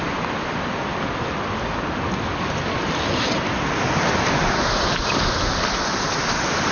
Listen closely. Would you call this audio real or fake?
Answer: real